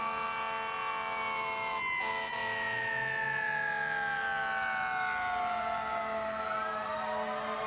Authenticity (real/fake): real